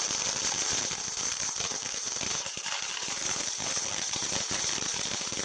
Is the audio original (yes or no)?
no